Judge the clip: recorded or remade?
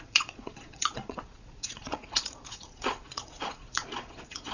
remade